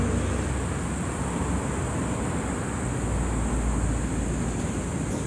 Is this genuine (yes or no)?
yes